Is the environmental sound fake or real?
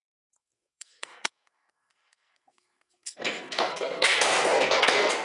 fake